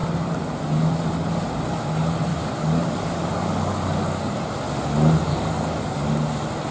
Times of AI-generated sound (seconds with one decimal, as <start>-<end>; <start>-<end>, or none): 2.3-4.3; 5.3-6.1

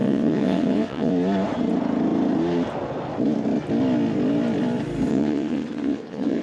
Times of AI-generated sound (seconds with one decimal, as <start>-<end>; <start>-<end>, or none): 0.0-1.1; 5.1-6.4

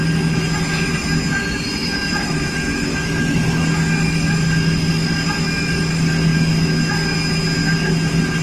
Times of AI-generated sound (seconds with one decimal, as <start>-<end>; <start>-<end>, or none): 1.8-3.6

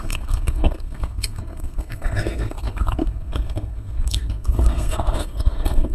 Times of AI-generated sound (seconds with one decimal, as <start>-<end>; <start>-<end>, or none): 0.0-5.9

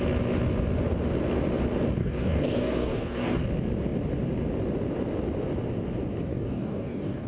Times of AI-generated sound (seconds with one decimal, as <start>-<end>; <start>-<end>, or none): 2.0-3.4; 6.3-7.3

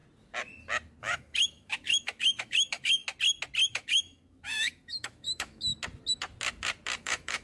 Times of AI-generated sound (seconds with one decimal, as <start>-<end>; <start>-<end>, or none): 1.0-3.0; 3.7-5.7; 7.0-7.4

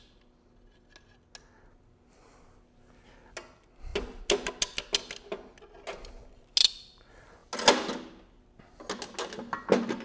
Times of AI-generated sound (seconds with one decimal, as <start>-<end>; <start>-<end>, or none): none